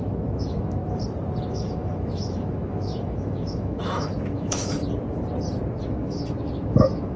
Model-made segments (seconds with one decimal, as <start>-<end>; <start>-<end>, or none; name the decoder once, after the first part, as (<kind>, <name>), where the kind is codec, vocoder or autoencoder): 0.0-0.8 (autoencoder, DAC-VAE); 1.5-4.8; 5.8-7.2